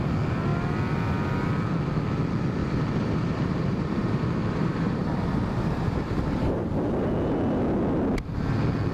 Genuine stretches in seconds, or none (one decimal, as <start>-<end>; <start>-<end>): 0.0-2.6; 6.7-8.9